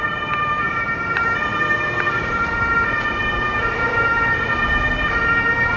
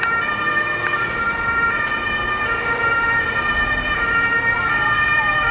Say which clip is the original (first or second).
second